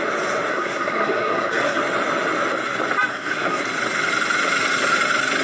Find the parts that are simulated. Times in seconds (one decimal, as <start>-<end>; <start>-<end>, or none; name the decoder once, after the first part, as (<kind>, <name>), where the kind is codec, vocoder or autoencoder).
0.5-1.8 (codec, SNAC); 3.1-3.6